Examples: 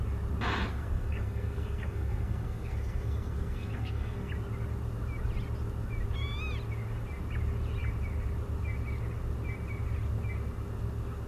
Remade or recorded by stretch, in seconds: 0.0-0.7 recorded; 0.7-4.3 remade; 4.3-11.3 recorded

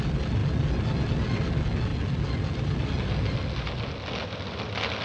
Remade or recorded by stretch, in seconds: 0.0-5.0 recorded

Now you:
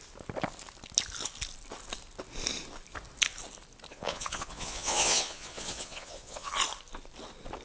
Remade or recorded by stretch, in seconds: 0.0-3.9 recorded; 3.9-6.5 remade; 6.5-7.6 recorded

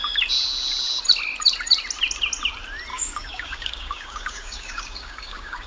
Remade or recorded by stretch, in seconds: 0.0-2.9 recorded; 2.9-5.7 remade

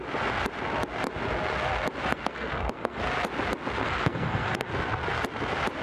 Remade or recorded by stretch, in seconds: 0.0-2.1 recorded; 2.1-3.0 remade; 3.0-3.8 recorded; 3.8-4.7 remade; 4.7-5.8 recorded

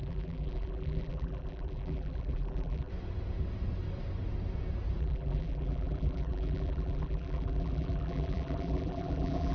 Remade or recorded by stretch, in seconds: 0.0-2.9 remade; 2.9-5.0 recorded; 5.0-9.5 remade

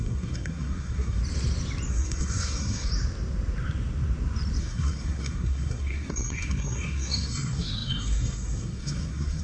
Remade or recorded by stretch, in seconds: 0.0-1.2 remade; 1.2-1.9 recorded; 1.9-2.9 remade; 2.9-4.6 recorded; 4.6-9.4 remade

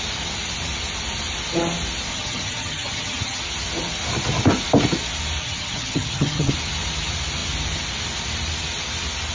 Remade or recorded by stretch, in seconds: 0.0-2.1 recorded; 2.1-3.4 remade; 3.4-5.4 recorded; 5.4-6.5 remade; 6.5-9.3 recorded